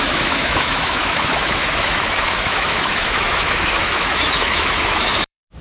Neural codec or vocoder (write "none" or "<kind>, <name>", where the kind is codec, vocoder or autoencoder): autoencoder, DAC-VAE